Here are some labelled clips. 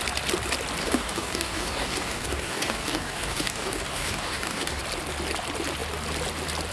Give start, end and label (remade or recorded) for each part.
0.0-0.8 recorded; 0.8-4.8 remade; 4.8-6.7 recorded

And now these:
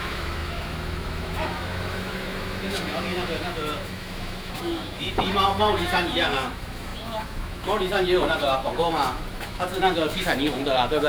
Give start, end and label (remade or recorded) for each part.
0.0-11.1 remade

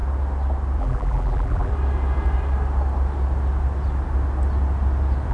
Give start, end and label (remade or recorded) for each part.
0.0-0.8 recorded; 0.8-1.7 remade; 1.7-5.3 recorded

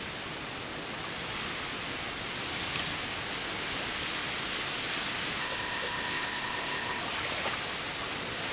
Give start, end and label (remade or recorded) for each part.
0.0-5.4 recorded; 5.4-7.0 remade; 7.0-8.5 recorded

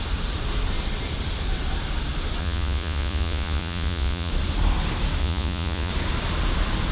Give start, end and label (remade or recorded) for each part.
0.0-2.4 recorded; 2.4-4.3 remade; 4.3-5.2 recorded; 5.2-5.9 remade; 5.9-6.9 recorded

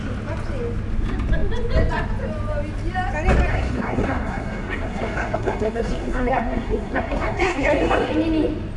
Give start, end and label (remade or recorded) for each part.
0.0-3.5 recorded; 3.5-8.1 remade; 8.1-8.8 recorded

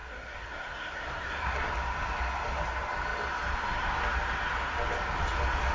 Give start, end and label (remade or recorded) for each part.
0.0-1.6 remade; 1.6-5.7 recorded

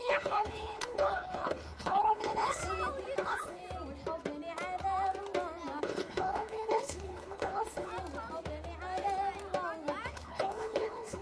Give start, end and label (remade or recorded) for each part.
0.0-2.6 remade; 2.6-3.2 recorded; 3.2-3.6 remade; 3.6-5.8 recorded; 5.8-7.9 remade; 7.9-10.1 recorded; 10.1-11.2 remade